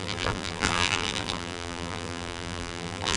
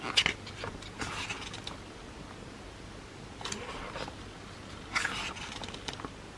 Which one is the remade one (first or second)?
first